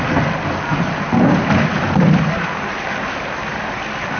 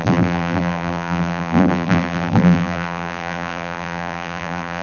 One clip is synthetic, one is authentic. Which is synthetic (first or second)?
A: second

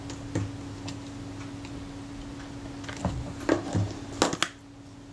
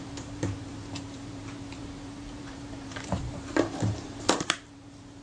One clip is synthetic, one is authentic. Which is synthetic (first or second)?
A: second